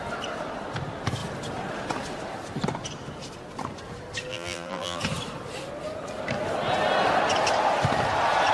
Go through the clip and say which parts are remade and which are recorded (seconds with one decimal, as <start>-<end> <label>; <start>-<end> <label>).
0.0-4.3 recorded; 4.3-5.0 remade; 5.0-8.5 recorded